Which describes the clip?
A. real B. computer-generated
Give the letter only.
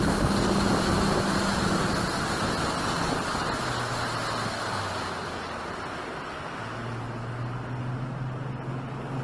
A